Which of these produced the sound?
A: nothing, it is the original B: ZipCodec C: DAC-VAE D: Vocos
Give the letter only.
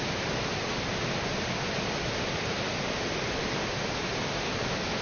A